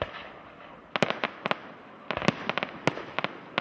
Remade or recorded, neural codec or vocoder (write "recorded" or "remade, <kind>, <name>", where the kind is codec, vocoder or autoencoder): recorded